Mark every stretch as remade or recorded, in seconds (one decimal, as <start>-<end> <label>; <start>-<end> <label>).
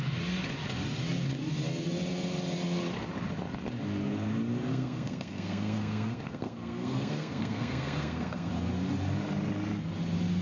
0.0-4.7 recorded; 4.7-8.5 remade; 8.5-10.4 recorded